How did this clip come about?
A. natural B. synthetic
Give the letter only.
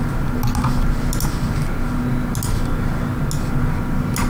A